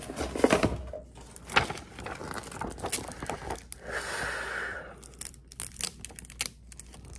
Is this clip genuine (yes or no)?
yes